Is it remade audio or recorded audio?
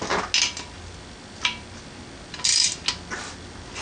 recorded